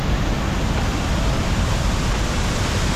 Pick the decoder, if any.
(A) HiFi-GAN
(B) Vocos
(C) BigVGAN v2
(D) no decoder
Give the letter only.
D